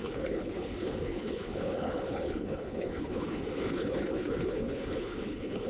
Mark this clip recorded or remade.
remade